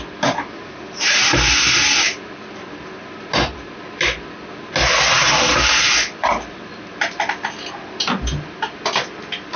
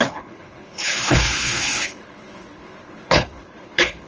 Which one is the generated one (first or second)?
second